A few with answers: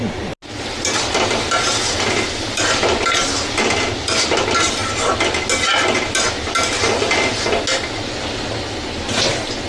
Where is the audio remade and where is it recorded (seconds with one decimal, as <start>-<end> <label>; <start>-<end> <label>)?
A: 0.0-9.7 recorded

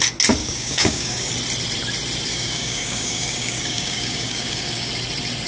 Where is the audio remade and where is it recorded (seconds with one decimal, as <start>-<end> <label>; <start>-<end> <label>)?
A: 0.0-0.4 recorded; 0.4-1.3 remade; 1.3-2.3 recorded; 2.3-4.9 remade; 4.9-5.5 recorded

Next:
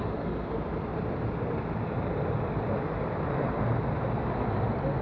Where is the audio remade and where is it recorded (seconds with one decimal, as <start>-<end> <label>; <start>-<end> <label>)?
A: 0.0-5.0 recorded

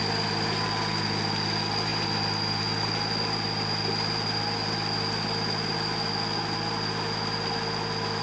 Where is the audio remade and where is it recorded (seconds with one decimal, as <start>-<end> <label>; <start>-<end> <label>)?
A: 0.0-8.2 recorded

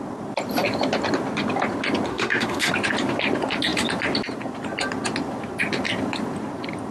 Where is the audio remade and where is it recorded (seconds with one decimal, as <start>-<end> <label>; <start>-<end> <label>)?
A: 0.0-2.1 recorded; 2.1-2.7 remade; 2.7-6.9 recorded

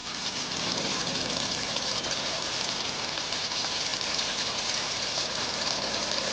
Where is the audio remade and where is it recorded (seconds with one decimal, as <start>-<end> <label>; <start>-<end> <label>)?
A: 0.0-6.3 recorded